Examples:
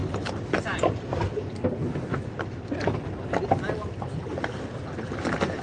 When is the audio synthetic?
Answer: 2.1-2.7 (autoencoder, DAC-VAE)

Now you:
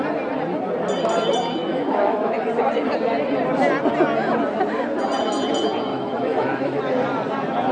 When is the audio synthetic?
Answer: 1.6-2.5 (autoencoder, DAC-VAE); 5.9-6.8

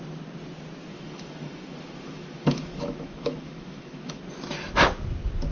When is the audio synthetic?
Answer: 0.9-4.2 (autoencoder, DAC-VAE)

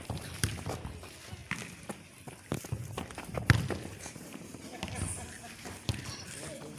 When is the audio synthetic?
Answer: none

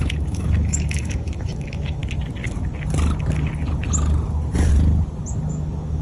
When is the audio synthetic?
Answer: 0.0-2.0 (autoencoder, DAC-VAE); 5.5-6.0

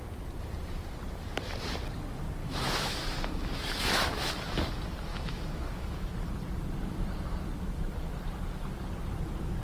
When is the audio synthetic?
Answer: 2.4-4.3 (autoencoder, DAC-VAE); 5.1-6.1

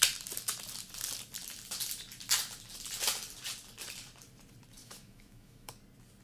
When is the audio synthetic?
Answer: 4.8-5.7 (autoencoder, DAC-VAE)

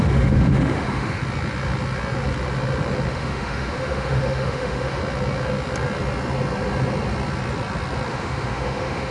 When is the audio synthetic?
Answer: 0.0-1.2 (autoencoder, DAC-VAE); 3.1-5.0; 8.1-9.1